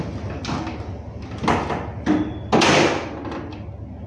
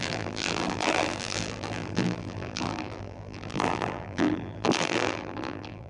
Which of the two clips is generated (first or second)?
second